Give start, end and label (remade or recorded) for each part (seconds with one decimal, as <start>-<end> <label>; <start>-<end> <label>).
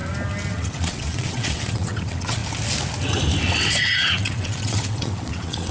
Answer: 0.0-0.5 recorded; 0.5-2.4 remade; 2.4-3.7 recorded; 3.7-5.7 remade